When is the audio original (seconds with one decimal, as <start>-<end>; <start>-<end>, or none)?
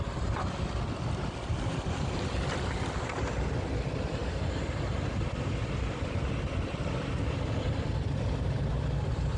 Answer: 0.0-9.4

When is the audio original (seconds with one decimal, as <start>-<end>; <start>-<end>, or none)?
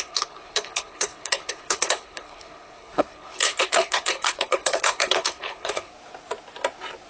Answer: 5.9-7.1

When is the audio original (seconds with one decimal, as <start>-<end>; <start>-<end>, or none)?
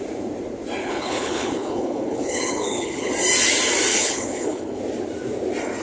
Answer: 0.0-0.8; 3.1-3.9; 4.8-5.8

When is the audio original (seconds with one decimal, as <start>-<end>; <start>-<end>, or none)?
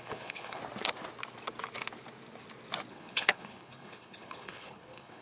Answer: 0.6-2.9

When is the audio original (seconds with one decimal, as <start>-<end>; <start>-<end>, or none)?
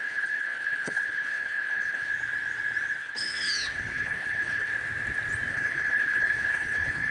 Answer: 2.1-3.0; 4.7-5.5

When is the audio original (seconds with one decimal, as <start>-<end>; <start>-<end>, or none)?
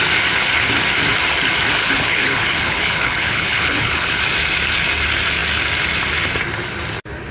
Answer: 0.0-1.8; 4.2-7.3